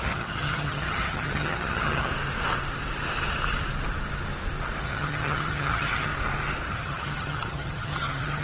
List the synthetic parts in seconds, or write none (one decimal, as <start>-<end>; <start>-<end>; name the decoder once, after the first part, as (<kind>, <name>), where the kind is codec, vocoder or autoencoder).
0.0-2.1 (vocoder, HiFi-GAN); 4.8-6.1; 6.7-8.4

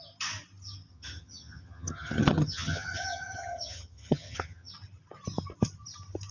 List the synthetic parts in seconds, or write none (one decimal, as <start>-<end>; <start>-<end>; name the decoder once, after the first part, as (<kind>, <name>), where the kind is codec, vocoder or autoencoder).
0.9-4.7 (vocoder, HiFi-GAN)

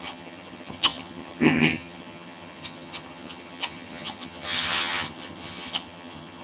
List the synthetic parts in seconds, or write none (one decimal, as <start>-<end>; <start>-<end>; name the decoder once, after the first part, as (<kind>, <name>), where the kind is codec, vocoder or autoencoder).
0.0-6.4 (vocoder, HiFi-GAN)